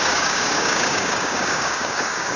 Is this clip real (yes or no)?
no